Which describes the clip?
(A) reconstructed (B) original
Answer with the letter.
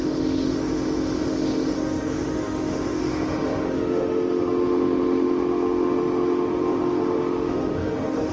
A